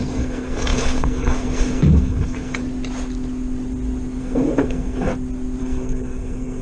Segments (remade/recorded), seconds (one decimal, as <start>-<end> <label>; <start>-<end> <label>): 0.0-2.6 remade; 2.6-4.2 recorded; 4.2-5.1 remade; 5.1-5.6 recorded; 5.6-6.6 remade